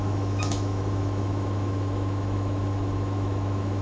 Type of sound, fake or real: fake